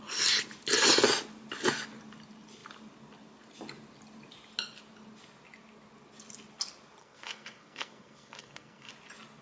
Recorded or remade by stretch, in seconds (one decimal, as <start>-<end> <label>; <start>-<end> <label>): 0.0-7.0 recorded; 7.0-8.9 remade; 8.9-9.4 recorded